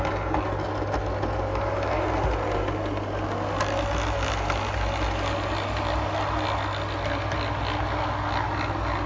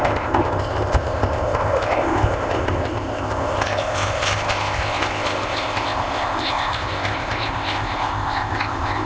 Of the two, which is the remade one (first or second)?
second